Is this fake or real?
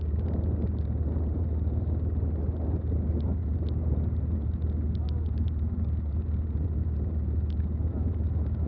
real